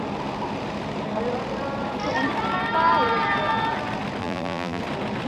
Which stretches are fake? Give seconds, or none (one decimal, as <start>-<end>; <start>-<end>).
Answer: 4.2-4.8